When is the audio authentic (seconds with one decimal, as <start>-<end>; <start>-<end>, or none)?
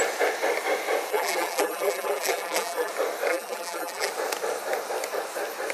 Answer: 0.0-1.1; 2.9-3.3; 4.1-5.7